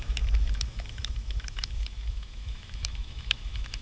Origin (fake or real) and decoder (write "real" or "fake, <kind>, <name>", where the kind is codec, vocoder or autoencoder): fake, autoencoder, DAC-VAE